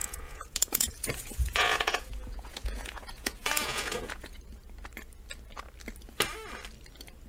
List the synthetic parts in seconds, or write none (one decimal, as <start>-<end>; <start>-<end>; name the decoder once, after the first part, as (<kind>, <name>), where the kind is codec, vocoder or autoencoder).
0.0-4.4 (vocoder, Vocos)